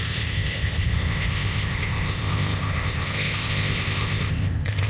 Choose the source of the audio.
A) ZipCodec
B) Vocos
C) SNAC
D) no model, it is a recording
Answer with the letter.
A